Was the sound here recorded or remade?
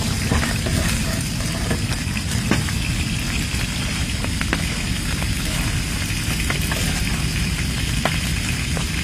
recorded